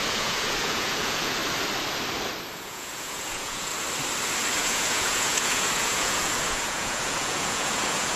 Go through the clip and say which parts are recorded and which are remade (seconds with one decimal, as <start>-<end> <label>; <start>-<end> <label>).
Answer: 0.0-1.4 remade; 1.4-2.5 recorded; 2.5-3.7 remade; 3.7-4.6 recorded; 4.6-8.2 remade